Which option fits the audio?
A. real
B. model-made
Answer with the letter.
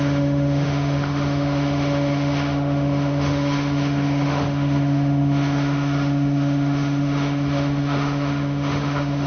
B